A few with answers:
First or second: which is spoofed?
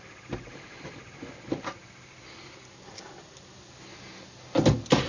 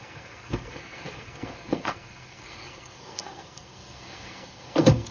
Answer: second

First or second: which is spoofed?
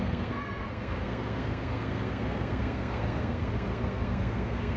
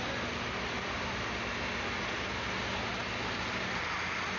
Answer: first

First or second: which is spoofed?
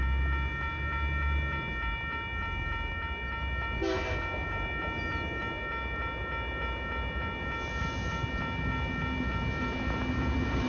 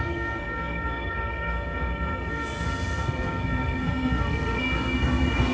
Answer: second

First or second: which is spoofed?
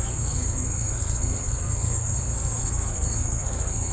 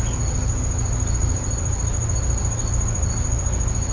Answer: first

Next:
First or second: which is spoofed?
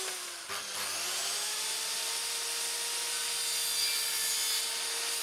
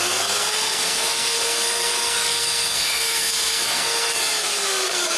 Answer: second